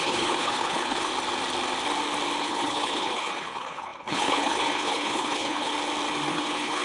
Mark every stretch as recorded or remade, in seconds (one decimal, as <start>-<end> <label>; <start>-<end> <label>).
0.0-1.1 remade; 1.1-2.4 recorded; 2.4-5.7 remade; 5.7-6.3 recorded; 6.3-6.8 remade